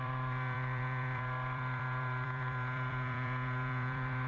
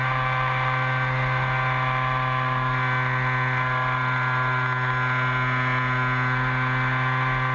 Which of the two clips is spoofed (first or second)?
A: first